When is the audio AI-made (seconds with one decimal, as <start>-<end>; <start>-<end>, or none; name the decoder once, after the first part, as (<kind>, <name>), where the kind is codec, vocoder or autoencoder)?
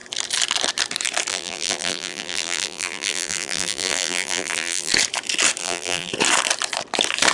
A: 1.3-4.9 (vocoder, BigVGAN v2); 5.6-6.1